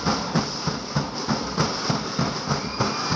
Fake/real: real